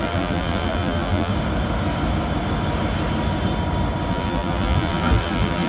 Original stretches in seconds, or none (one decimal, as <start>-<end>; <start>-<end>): 1.3-4.1